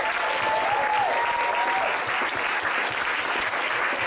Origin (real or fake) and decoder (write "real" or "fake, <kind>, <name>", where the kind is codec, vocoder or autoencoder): real